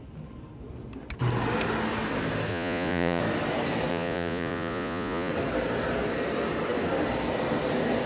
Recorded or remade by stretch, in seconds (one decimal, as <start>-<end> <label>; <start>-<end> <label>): 0.0-2.5 recorded; 2.5-3.2 remade; 3.2-3.9 recorded; 3.9-5.3 remade; 5.3-8.1 recorded